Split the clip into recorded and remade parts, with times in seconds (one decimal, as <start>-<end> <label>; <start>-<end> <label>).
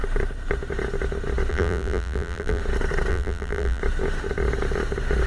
0.0-1.5 recorded; 1.5-2.6 remade; 2.6-3.1 recorded; 3.1-3.8 remade; 3.8-5.3 recorded